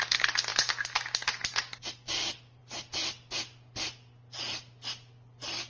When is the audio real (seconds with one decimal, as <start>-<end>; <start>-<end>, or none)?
0.0-5.7